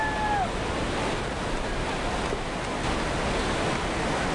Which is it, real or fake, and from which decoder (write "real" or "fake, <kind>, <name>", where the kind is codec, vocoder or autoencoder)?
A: real